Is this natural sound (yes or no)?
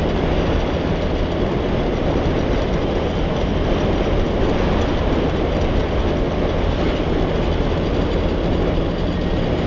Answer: yes